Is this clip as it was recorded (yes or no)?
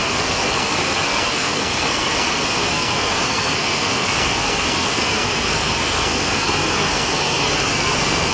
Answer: no